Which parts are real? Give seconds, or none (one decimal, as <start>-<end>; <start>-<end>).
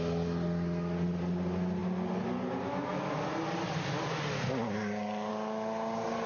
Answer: 0.0-6.3